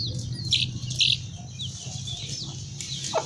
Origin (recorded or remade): recorded